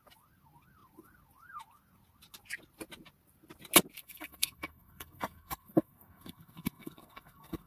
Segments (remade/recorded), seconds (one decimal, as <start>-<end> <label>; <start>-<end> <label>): 0.0-4.0 recorded; 4.0-7.7 remade